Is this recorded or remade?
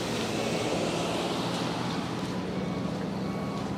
recorded